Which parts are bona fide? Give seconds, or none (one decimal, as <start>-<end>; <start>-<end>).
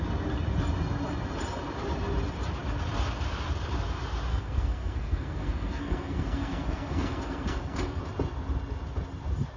0.0-4.3; 8.0-9.6